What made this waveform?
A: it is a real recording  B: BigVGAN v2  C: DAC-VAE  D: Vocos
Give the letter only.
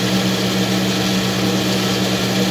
A